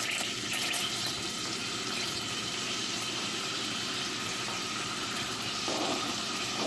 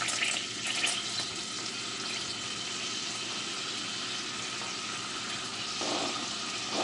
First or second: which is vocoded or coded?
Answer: first